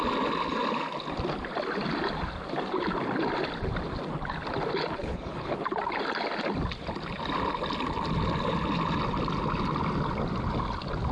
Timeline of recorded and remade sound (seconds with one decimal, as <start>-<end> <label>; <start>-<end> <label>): 0.0-5.0 recorded; 5.0-5.5 remade; 5.5-11.1 recorded